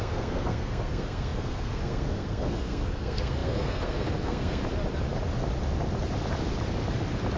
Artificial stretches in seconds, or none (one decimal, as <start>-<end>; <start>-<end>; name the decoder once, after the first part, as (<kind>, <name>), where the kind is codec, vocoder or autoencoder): 0.0-4.6 (codec, SNAC)